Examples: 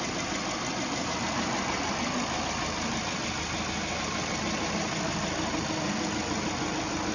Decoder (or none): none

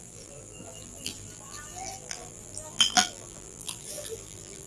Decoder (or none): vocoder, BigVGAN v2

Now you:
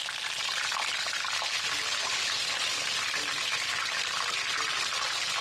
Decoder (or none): none